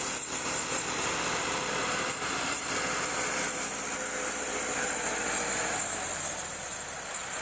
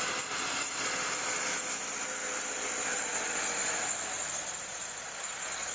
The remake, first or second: first